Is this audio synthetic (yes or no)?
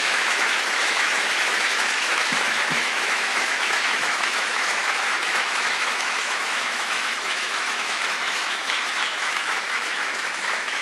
yes